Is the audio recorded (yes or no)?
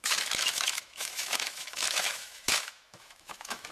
no